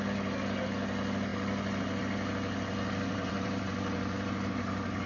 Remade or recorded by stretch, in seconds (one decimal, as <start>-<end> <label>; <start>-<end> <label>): 0.0-3.1 recorded; 3.1-4.5 remade; 4.5-5.1 recorded

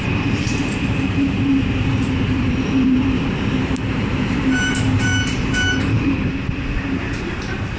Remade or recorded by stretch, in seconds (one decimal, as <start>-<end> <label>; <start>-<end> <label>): 0.0-5.1 remade; 5.1-5.8 recorded; 5.8-7.8 remade

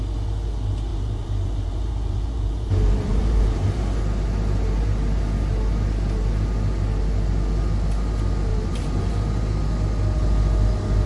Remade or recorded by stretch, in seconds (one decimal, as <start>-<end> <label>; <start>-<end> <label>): 0.0-0.9 recorded; 0.9-3.8 remade; 3.8-8.5 recorded; 8.5-9.1 remade; 9.1-11.1 recorded

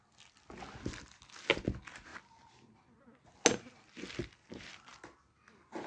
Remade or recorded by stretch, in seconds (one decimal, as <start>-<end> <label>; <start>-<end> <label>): 0.0-5.9 recorded

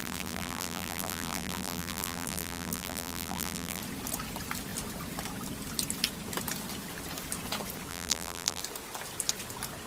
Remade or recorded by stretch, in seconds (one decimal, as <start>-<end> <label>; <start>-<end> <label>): 0.0-3.8 remade; 3.8-7.9 recorded; 7.9-8.6 remade; 8.6-9.9 recorded

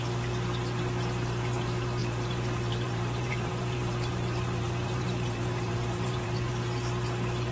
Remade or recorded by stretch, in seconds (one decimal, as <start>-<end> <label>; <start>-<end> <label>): 0.0-2.0 recorded; 2.0-6.5 remade; 6.5-7.5 recorded

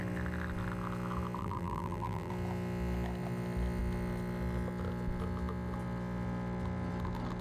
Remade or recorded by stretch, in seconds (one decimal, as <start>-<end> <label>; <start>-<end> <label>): 0.0-1.4 recorded; 1.4-2.3 remade; 2.3-7.4 recorded

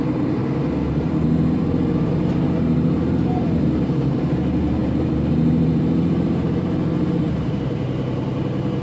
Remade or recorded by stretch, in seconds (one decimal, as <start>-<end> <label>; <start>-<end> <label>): 0.0-0.4 remade; 0.4-0.9 recorded; 0.9-8.8 remade